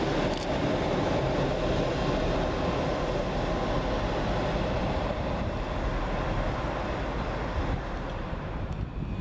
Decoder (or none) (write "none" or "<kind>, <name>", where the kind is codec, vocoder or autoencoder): none